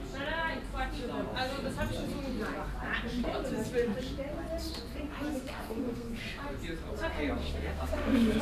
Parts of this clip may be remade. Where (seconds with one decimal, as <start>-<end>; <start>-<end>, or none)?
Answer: 5.3-6.2; 7.4-8.4